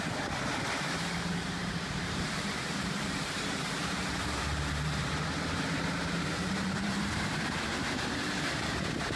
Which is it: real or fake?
fake